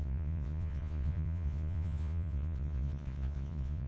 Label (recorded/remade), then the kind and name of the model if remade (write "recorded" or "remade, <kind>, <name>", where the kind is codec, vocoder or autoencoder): remade, vocoder, Vocos